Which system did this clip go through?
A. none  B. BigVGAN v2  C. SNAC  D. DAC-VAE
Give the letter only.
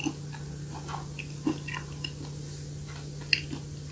A